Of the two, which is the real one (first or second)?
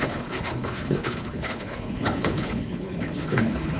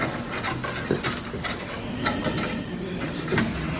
second